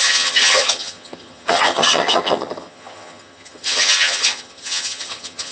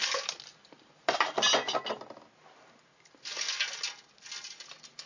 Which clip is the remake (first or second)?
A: first